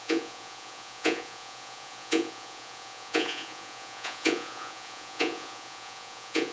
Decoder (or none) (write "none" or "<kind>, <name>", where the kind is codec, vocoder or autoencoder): vocoder, Vocos